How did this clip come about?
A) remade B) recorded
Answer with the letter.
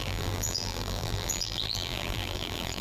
A